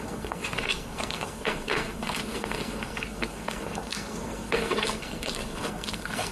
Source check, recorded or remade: remade